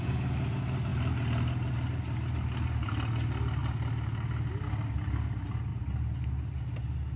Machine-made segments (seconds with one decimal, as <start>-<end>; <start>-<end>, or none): none